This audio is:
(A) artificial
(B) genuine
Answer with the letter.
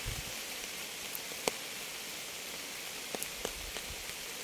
B